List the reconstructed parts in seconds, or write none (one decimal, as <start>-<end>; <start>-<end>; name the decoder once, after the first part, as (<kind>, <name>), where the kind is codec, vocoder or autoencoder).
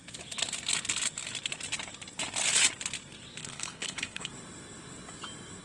3.4-4.3 (codec, HILCodec)